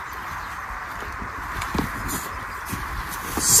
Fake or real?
real